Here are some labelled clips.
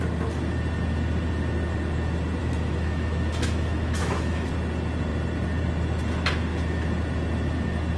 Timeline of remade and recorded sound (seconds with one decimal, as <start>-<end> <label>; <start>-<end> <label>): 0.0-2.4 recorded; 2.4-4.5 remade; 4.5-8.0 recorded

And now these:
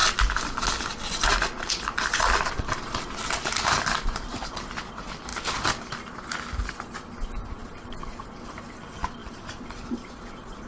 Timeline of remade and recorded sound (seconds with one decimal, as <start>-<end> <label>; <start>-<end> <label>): 0.0-10.7 recorded

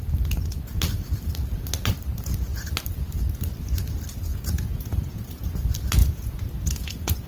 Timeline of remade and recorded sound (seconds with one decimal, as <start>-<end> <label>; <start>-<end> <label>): 0.0-4.3 recorded; 4.3-5.6 remade; 5.6-6.0 recorded; 6.0-7.3 remade

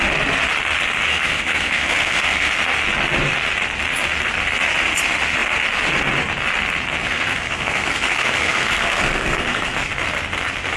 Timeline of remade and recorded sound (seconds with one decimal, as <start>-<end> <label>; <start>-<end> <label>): 0.0-1.1 recorded; 1.1-2.5 remade; 2.5-7.0 recorded; 7.0-9.9 remade; 9.9-10.8 recorded

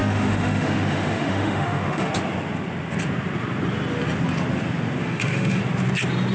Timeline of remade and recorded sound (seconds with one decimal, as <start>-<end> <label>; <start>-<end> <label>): 0.0-2.1 remade; 2.1-5.0 recorded; 5.0-5.6 remade; 5.6-6.3 recorded

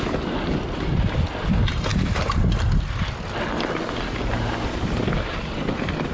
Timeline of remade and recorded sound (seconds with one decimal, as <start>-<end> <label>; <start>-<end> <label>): 0.0-6.1 recorded

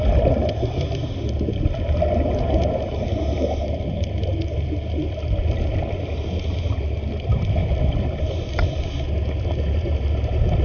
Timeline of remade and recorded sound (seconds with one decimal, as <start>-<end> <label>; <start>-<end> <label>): 0.0-10.6 recorded